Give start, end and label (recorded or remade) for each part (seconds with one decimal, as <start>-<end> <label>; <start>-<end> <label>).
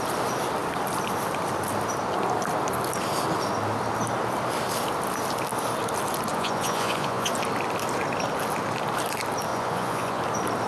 0.0-6.3 recorded; 6.3-7.3 remade; 7.3-9.5 recorded; 9.5-10.2 remade; 10.2-10.7 recorded